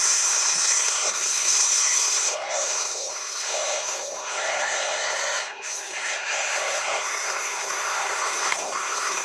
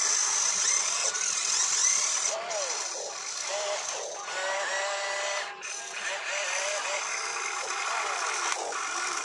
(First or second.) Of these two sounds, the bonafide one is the second